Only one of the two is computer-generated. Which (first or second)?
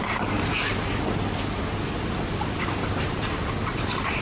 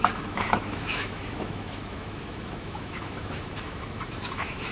second